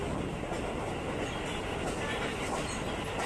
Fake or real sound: real